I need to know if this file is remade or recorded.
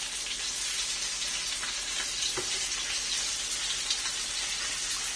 recorded